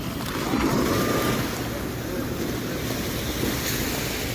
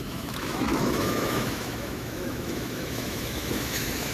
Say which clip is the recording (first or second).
first